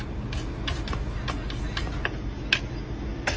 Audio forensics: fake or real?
real